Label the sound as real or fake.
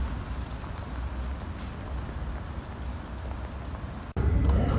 real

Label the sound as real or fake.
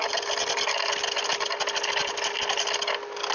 real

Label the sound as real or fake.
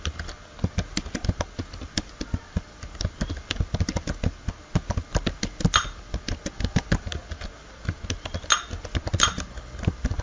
real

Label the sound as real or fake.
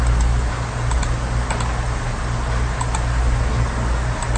real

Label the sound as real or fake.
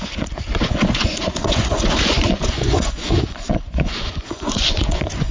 fake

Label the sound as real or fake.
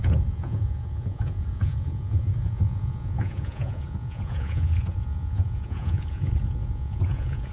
fake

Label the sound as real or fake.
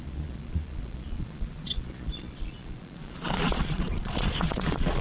fake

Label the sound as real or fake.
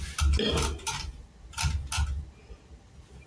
real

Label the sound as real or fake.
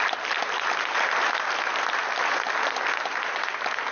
real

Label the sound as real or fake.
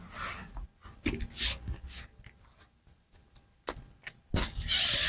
real